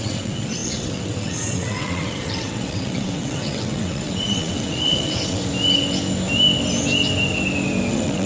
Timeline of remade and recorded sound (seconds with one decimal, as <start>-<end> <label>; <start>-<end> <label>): 0.0-5.4 remade; 5.4-7.9 recorded; 7.9-8.3 remade